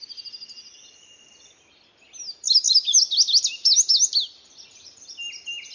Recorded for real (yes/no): yes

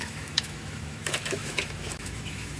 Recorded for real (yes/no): no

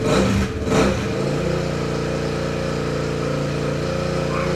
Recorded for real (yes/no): yes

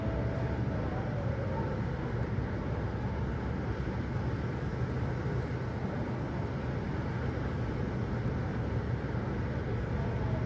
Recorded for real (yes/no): yes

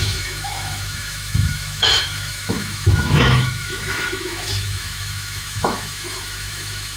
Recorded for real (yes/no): no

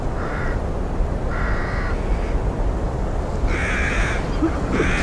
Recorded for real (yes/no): yes